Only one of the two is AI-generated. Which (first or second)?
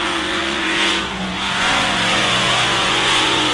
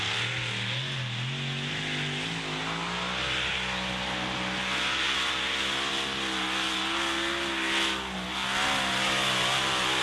first